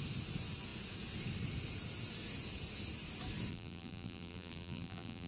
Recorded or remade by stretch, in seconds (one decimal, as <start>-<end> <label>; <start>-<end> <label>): 0.0-3.5 recorded; 3.5-5.3 remade

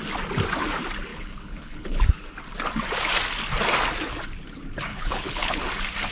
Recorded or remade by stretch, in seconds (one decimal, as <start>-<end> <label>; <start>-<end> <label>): 0.0-1.1 recorded; 1.1-2.1 remade; 2.1-4.9 recorded; 4.9-5.6 remade; 5.6-6.1 recorded

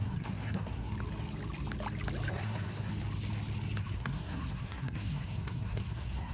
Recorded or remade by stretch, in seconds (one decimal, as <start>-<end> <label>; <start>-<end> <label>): 0.0-0.9 remade; 0.9-2.3 recorded; 2.3-2.9 remade; 2.9-3.8 recorded; 3.8-6.3 remade

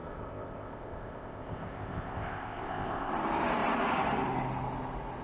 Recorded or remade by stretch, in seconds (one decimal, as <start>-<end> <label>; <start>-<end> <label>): 0.0-3.1 remade; 3.1-5.2 recorded

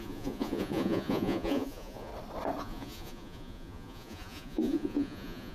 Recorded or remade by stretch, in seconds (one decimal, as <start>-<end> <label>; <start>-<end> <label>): 0.0-2.1 remade; 2.1-2.6 recorded; 2.6-5.5 remade